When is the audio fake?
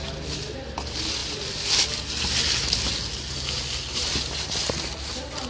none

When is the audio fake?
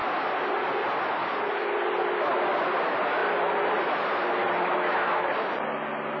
none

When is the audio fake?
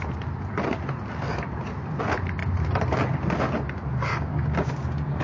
4.1-5.2 (codec, DAC)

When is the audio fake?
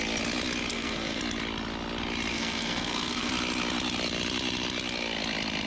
0.7-1.2 (codec, SNAC); 2.3-3.3